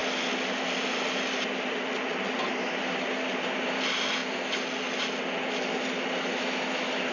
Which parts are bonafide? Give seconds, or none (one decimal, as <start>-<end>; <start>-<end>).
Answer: 0.0-7.1